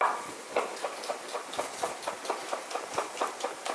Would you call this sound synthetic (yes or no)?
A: no